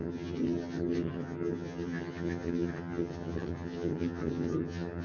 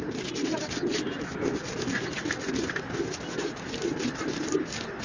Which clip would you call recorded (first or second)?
second